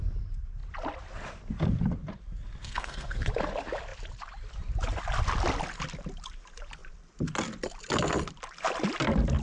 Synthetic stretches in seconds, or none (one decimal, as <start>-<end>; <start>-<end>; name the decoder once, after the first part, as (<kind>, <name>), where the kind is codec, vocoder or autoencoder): 2.6-3.2 (codec, SNAC)